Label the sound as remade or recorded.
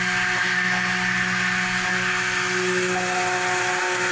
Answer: recorded